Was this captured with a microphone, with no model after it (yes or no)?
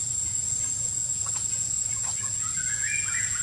no